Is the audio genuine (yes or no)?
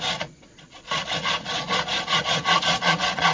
no